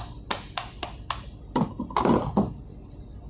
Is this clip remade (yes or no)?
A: no